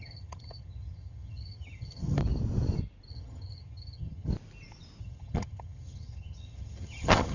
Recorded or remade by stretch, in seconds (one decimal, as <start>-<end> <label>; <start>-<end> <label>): 0.0-2.2 remade; 2.2-3.1 recorded; 3.1-4.3 remade; 4.3-5.0 recorded; 5.0-7.3 remade